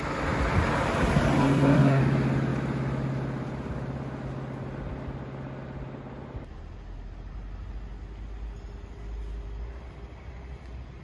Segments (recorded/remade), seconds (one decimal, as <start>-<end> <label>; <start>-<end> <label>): 0.0-1.4 recorded; 1.4-2.0 remade; 2.0-11.0 recorded

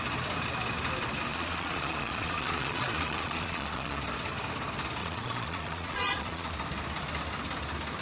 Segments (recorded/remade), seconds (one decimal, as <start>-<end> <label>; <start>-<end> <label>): 0.0-1.3 recorded; 1.3-4.0 remade; 4.0-5.0 recorded; 5.0-6.5 remade; 6.5-8.0 recorded

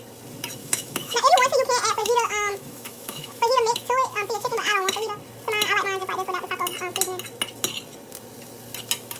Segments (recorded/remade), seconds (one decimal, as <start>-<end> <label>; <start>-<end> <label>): 0.0-0.6 recorded; 0.6-1.3 remade; 1.3-2.0 recorded; 2.0-4.9 remade; 4.9-9.2 recorded